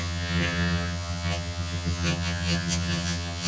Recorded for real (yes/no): no